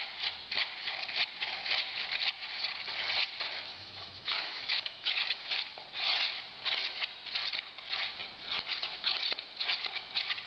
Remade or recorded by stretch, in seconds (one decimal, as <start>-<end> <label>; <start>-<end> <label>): 0.0-3.7 recorded; 3.7-5.5 remade; 5.5-10.5 recorded